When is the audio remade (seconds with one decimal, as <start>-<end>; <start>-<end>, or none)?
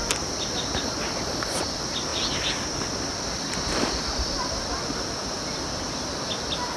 none